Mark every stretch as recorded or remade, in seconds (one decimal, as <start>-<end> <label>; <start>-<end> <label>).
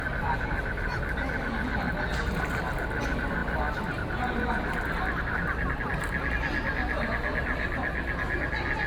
0.0-8.9 recorded